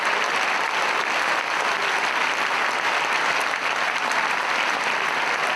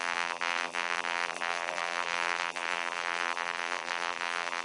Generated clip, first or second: second